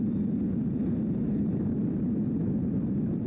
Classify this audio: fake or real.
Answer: real